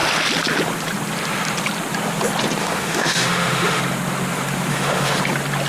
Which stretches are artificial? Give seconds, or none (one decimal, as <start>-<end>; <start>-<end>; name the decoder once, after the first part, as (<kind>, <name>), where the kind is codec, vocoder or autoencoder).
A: 2.6-3.8 (autoencoder, DAC-VAE); 4.7-5.2